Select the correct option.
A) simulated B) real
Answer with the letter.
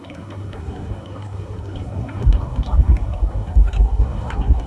A